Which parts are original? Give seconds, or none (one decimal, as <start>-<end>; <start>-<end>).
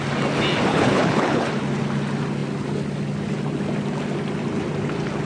0.0-0.7; 1.5-5.3